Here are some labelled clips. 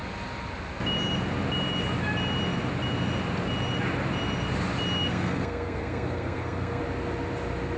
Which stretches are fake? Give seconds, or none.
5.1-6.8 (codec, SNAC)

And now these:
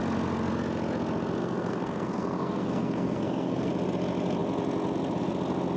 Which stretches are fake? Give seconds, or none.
1.4-3.7 (codec, SNAC)

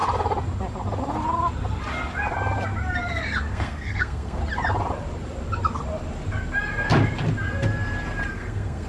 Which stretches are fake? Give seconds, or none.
3.5-4.4 (codec, SNAC); 8.3-8.9

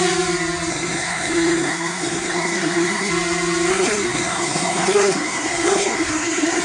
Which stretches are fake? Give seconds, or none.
0.7-3.1 (codec, SNAC); 3.7-6.6

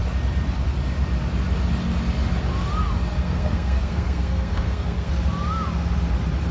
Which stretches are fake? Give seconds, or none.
3.2-5.1 (codec, SNAC)